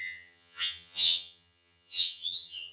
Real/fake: fake